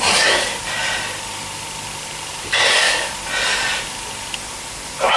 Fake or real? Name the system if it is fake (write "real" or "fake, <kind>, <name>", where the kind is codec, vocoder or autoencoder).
real